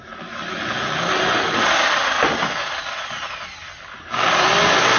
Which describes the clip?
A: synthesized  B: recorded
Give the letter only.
B